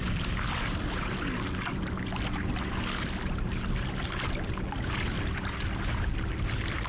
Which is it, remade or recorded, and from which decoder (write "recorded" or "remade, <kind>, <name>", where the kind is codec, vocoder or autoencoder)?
recorded